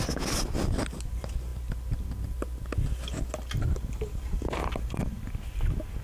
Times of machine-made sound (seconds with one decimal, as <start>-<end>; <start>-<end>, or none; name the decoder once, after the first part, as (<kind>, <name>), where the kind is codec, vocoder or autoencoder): none

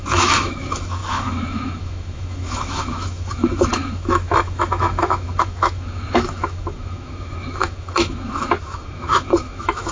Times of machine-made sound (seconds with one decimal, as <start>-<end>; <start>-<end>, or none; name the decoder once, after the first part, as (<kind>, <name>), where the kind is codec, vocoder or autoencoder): 0.0-9.9 (autoencoder, DAC-VAE)

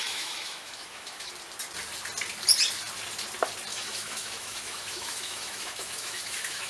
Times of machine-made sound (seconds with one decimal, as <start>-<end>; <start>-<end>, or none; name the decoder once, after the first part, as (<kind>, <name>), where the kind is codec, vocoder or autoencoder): 0.0-1.3 (autoencoder, DAC-VAE); 3.7-6.7

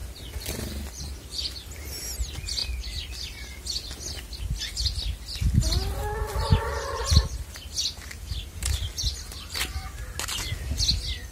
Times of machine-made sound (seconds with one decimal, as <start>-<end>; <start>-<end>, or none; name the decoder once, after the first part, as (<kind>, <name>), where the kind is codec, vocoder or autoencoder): 0.0-1.7 (vocoder, BigVGAN v2); 2.6-3.1; 6.2-7.0

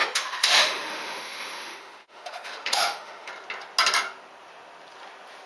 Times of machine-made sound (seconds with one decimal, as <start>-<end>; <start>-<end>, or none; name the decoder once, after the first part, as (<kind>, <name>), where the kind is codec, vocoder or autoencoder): 0.0-3.3 (autoencoder, DAC-VAE)

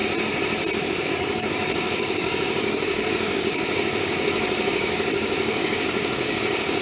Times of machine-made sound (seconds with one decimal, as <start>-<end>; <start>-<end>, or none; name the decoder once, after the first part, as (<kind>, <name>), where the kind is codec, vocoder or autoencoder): 1.0-6.8 (codec, DAC)

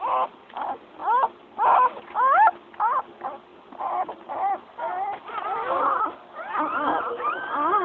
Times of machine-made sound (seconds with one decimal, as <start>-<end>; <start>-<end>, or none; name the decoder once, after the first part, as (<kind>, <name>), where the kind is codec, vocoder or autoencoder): none

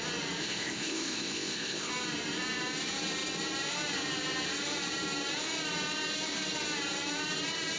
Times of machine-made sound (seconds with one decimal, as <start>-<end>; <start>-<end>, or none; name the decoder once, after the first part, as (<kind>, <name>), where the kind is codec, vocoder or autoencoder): 0.4-1.9 (codec, ZipCodec)